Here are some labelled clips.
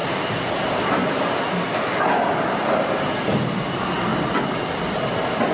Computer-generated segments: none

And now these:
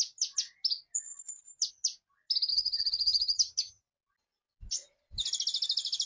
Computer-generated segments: 2.5-3.8 (vocoder, HiFi-GAN)